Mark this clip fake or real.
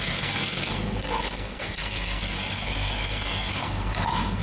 fake